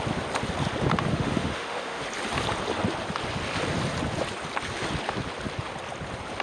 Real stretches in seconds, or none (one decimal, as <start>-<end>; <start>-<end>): 0.0-1.1; 2.0-6.4